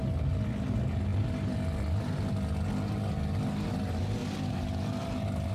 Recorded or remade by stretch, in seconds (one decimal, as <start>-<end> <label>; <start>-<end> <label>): 0.0-5.5 recorded